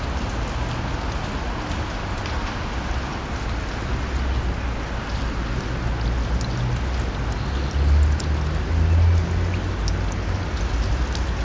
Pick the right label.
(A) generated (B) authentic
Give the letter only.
B